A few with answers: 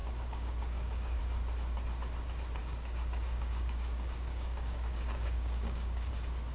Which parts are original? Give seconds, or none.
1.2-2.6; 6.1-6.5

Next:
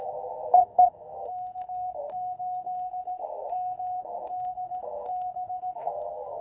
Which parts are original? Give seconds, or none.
none

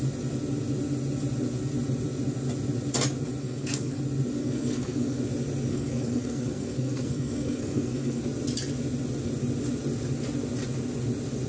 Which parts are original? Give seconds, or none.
0.0-3.4; 4.0-4.4; 5.2-5.7; 8.2-11.5

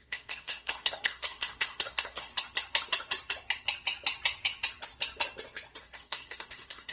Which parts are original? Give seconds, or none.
2.3-5.8

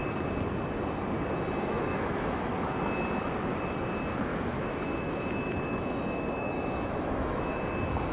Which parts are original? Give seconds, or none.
0.0-1.7; 2.5-4.3; 7.5-8.1

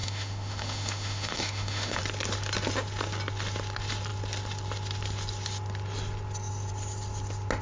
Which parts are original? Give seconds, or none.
2.0-7.6

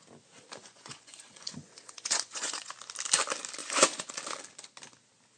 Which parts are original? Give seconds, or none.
0.0-0.6; 2.7-3.6; 4.1-5.4